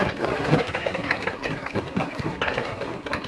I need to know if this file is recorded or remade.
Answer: remade